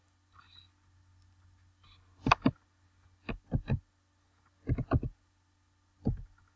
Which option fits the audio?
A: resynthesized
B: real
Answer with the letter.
B